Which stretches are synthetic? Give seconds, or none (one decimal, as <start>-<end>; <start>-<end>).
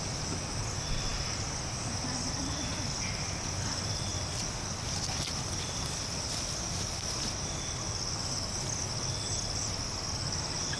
none